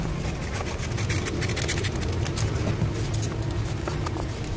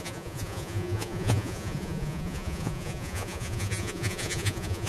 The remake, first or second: second